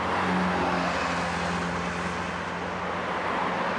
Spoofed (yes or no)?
no